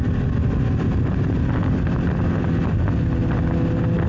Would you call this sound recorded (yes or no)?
yes